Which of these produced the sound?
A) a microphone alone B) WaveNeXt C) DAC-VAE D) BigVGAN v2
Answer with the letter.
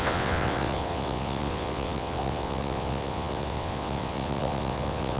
B